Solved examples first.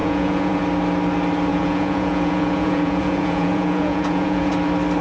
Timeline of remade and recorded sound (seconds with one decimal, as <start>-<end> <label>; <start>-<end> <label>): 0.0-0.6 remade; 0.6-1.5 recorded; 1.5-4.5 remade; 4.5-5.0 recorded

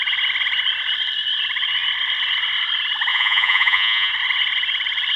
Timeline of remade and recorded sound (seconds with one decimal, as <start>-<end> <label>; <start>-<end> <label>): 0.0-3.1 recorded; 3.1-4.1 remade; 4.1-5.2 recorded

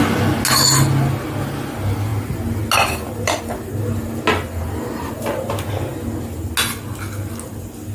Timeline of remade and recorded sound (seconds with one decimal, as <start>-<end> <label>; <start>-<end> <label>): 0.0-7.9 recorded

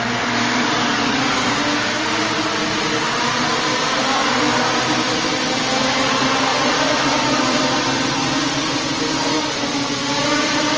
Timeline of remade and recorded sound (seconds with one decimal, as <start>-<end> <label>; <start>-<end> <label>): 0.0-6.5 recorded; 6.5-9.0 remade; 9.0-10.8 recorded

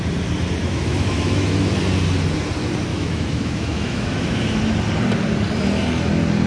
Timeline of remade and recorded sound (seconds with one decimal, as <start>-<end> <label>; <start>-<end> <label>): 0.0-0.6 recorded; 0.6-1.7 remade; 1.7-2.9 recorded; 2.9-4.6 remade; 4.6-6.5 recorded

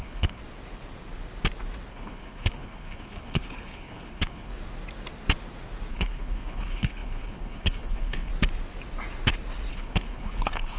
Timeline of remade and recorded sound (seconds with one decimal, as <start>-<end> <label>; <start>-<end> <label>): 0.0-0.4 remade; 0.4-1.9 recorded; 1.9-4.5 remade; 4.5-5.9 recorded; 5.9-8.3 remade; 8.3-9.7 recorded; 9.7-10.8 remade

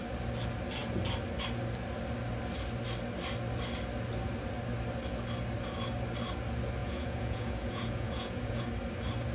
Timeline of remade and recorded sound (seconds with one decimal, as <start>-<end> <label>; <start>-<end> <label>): 0.0-6.8 recorded; 6.8-8.6 remade; 8.6-9.3 recorded

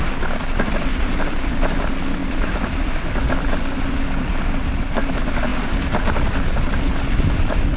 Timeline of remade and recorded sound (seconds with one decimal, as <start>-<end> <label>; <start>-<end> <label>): 0.0-7.8 recorded